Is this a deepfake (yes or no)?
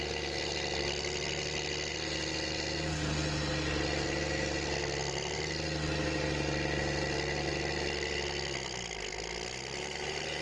no